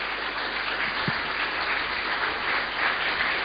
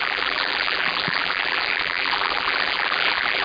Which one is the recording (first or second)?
first